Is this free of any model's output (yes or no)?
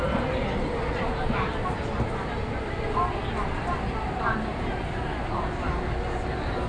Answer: yes